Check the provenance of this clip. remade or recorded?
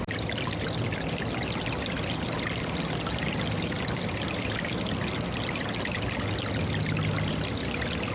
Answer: recorded